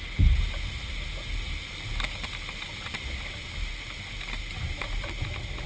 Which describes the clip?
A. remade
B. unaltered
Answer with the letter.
B